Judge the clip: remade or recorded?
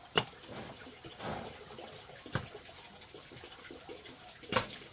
recorded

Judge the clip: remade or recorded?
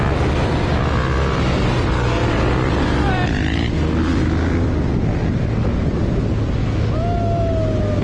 recorded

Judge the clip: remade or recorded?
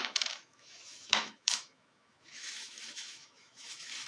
remade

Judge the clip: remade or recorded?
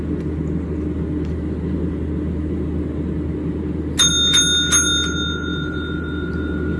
recorded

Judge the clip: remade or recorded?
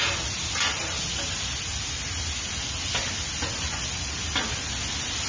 recorded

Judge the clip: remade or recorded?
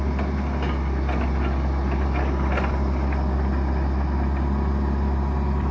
recorded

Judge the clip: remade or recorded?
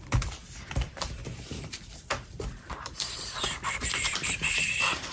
remade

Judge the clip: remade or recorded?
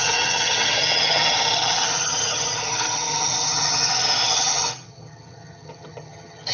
remade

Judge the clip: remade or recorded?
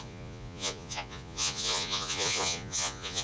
remade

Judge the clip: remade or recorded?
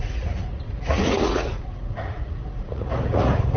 remade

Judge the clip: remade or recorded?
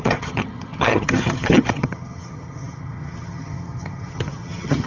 remade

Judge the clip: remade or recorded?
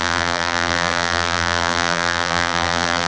remade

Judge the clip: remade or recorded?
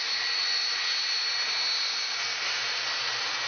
recorded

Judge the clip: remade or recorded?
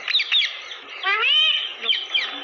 recorded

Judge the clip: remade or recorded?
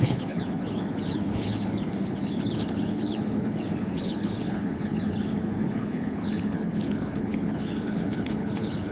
remade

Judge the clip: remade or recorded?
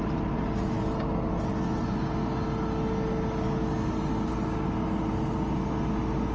recorded